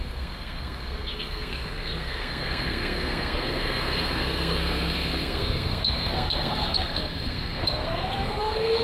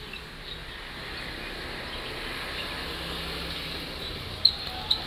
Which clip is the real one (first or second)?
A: second